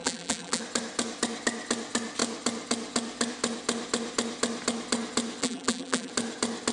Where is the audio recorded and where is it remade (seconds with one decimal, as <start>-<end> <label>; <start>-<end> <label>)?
0.0-0.6 remade; 0.6-5.4 recorded; 5.4-6.1 remade; 6.1-6.7 recorded